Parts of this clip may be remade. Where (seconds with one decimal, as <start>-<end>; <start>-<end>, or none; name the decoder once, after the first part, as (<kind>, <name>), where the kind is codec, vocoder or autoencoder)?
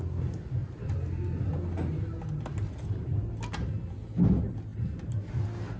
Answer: none